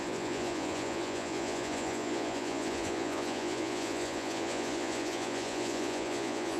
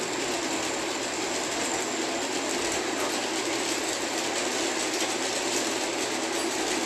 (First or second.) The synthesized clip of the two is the first